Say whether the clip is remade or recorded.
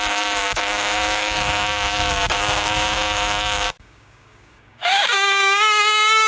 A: remade